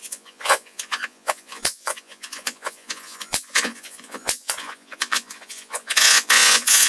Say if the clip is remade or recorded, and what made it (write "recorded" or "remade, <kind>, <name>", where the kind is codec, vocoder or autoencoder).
remade, vocoder, Vocos